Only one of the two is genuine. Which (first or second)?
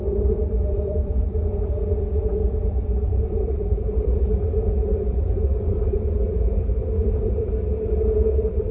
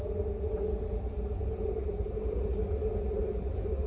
second